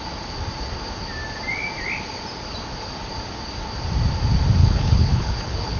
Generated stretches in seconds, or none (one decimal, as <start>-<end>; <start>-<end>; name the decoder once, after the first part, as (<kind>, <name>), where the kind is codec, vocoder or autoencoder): 4.6-5.8 (codec, HILCodec)